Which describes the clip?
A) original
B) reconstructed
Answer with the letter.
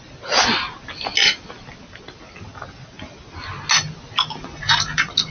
A